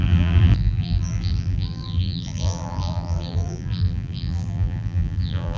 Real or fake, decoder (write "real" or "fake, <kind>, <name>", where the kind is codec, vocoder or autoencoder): fake, vocoder, BigVGAN v2